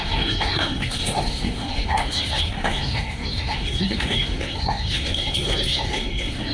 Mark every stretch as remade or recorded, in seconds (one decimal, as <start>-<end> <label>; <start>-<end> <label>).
0.0-6.5 remade